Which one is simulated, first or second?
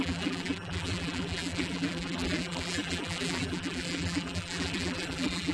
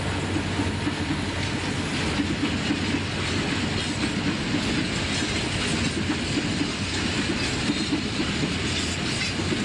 first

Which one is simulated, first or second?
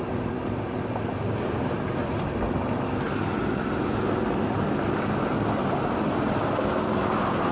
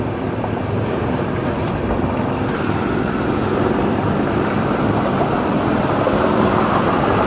second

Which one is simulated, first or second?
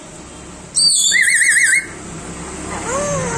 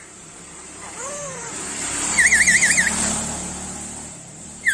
second